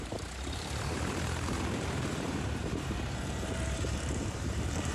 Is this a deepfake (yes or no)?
yes